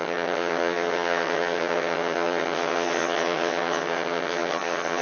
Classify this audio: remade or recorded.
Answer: remade